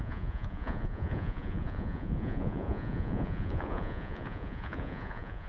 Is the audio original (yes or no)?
no